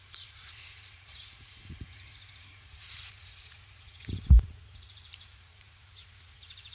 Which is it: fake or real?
fake